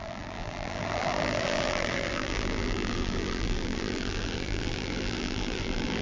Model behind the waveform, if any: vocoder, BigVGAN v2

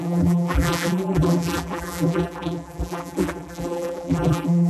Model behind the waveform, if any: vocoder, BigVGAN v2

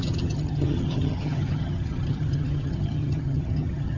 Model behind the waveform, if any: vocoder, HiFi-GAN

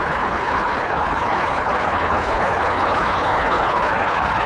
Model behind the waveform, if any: codec, HILCodec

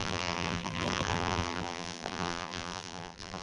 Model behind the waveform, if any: vocoder, BigVGAN v2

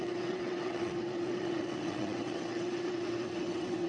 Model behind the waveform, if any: vocoder, WaveNeXt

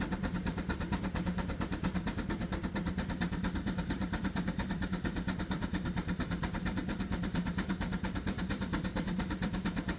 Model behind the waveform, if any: vocoder, BigVGAN v2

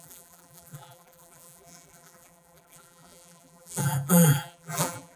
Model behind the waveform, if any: vocoder, BigVGAN v2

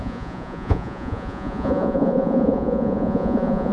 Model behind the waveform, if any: vocoder, Vocos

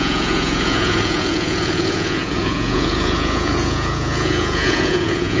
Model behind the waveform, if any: vocoder, Vocos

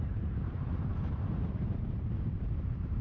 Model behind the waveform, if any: vocoder, BigVGAN v2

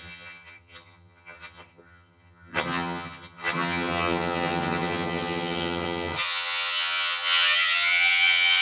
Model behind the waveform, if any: vocoder, HiFi-GAN